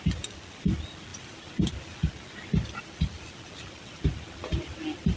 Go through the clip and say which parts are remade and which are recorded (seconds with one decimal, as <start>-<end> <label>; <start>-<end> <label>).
0.0-5.2 recorded